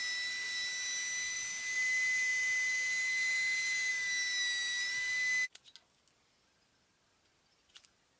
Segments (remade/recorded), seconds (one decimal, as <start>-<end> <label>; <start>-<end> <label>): 0.0-8.2 recorded